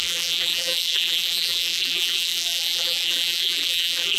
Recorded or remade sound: remade